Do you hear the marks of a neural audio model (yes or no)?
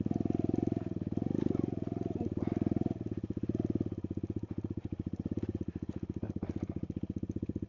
no